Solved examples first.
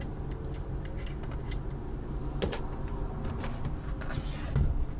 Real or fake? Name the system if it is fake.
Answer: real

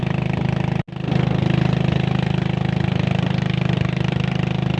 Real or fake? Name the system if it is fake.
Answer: real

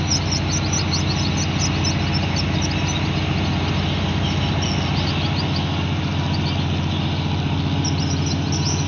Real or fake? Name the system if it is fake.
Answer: real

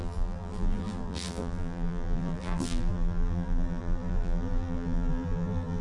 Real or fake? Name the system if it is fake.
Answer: fake, vocoder, BigVGAN v2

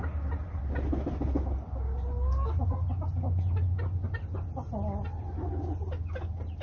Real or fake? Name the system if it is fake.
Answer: real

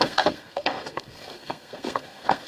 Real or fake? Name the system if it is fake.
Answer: fake, codec, SNAC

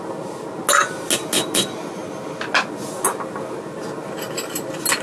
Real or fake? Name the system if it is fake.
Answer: real